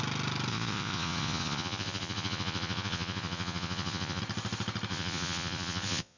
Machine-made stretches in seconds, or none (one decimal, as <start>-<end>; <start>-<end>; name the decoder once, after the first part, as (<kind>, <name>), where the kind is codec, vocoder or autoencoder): 0.5-4.2 (vocoder, Vocos); 4.9-6.2